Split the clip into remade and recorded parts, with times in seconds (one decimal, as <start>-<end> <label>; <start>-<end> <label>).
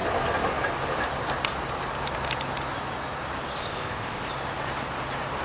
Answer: 0.0-3.6 recorded; 3.6-4.3 remade; 4.3-5.4 recorded